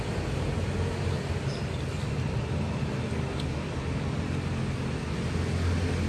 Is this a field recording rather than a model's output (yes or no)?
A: yes